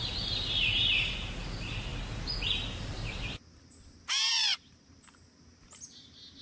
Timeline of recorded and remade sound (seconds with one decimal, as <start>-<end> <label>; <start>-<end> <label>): 0.0-6.4 recorded